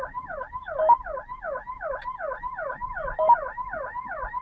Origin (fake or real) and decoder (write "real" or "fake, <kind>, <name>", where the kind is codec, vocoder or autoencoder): real